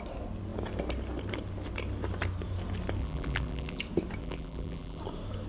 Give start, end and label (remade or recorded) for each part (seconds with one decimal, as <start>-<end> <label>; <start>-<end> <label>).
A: 0.0-3.0 recorded; 3.0-3.8 remade; 3.8-4.2 recorded; 4.2-5.0 remade; 5.0-5.5 recorded